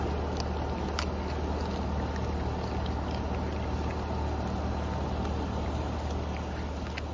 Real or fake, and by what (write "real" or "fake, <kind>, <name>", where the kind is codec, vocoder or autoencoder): real